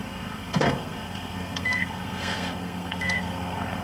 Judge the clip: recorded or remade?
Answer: remade